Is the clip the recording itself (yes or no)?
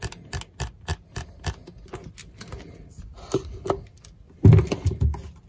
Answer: yes